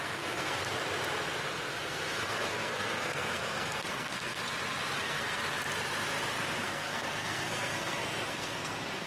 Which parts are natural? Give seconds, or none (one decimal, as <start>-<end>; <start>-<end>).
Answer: 0.6-1.8; 4.4-5.0; 5.4-6.6

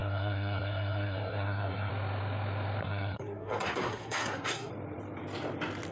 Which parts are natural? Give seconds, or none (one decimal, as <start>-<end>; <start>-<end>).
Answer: 1.9-2.8; 4.7-5.9

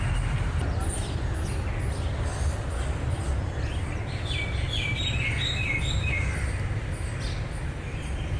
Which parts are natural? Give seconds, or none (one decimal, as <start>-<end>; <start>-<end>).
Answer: 0.0-8.4

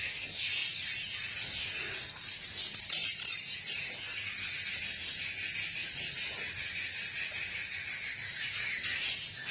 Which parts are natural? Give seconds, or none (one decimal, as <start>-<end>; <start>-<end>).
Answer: 0.0-0.6; 1.2-3.0; 3.8-9.5

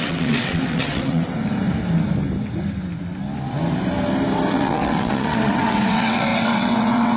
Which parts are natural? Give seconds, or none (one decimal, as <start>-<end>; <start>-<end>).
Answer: 1.2-4.5

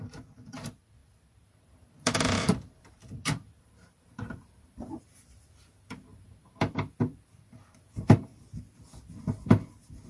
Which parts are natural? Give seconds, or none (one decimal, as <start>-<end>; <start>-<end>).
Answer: 8.3-10.1